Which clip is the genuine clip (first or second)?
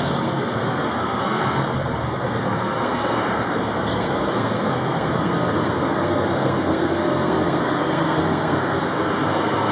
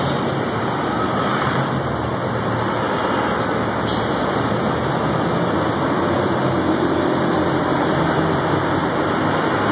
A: second